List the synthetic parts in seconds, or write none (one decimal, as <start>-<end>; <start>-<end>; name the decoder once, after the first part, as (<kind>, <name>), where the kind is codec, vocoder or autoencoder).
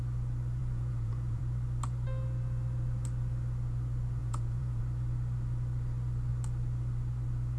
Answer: 0.6-1.4 (vocoder, Vocos); 4.2-4.8